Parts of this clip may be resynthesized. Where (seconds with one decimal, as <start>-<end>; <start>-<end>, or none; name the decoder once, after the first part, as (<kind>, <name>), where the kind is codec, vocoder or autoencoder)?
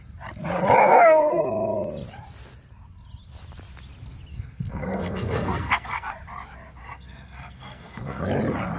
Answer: 0.8-1.4 (codec, SNAC); 4.3-6.1; 6.8-8.2